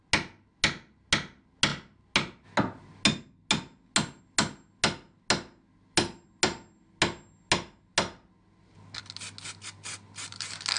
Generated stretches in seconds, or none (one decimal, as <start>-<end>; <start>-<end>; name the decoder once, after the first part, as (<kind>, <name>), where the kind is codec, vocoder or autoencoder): none